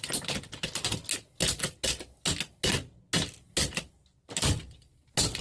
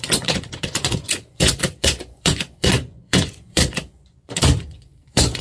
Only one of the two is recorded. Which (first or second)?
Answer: first